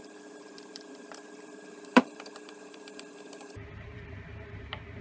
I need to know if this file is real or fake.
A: fake